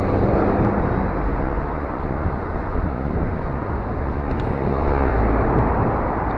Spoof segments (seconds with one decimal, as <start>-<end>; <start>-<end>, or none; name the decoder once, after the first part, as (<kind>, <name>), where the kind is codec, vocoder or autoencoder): 1.3-5.1 (vocoder, Vocos)

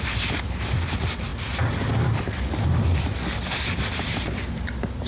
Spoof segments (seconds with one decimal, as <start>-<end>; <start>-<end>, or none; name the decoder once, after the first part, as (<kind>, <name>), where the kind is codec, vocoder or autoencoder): none

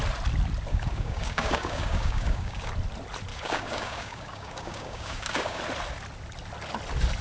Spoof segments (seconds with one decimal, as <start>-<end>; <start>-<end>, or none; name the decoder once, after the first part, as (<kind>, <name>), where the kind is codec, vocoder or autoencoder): 0.7-2.7 (codec, DAC); 3.3-5.6

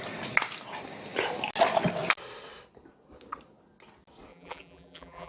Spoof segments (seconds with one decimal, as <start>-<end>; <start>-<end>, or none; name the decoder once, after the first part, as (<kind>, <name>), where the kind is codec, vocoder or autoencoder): 4.3-5.3 (vocoder, BigVGAN v2)

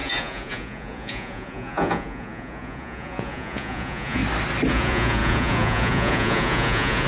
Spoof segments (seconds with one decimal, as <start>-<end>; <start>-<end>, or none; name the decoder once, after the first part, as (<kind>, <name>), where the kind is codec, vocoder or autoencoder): 0.0-4.2 (vocoder, Vocos); 4.7-7.1

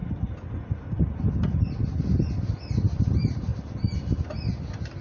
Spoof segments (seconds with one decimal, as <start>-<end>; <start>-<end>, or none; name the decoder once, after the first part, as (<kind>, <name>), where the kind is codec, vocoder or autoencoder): none

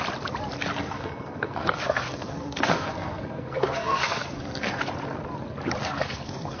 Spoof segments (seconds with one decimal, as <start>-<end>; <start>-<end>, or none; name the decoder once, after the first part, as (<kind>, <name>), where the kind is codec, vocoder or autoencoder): 0.8-4.8 (codec, SNAC); 5.8-6.6